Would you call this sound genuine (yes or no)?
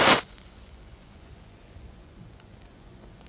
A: no